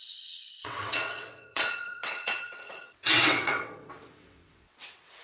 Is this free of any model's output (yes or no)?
no